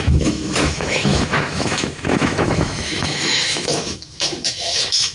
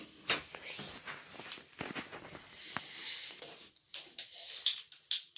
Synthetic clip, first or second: first